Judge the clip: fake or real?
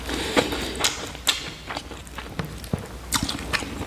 real